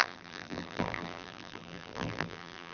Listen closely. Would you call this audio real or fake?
fake